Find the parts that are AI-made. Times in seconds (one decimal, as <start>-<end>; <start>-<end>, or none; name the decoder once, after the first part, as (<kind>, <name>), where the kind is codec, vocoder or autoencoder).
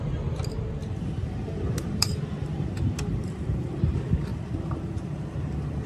0.8-3.8 (vocoder, BigVGAN v2); 4.3-5.1